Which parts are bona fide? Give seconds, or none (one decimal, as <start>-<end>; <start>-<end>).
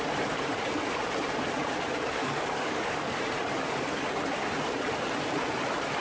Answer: 0.0-2.2; 3.2-6.0